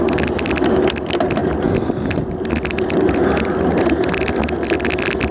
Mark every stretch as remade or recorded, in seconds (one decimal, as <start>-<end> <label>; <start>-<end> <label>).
0.0-5.3 recorded